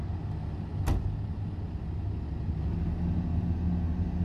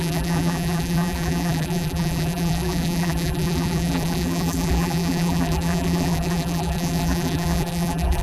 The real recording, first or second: first